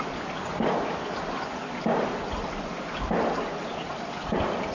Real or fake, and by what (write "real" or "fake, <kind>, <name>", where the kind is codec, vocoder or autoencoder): real